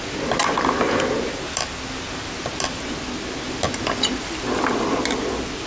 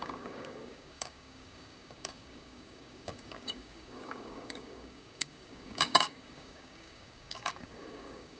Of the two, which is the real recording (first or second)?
first